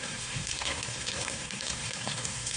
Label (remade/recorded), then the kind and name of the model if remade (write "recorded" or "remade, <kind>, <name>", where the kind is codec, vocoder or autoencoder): remade, codec, SNAC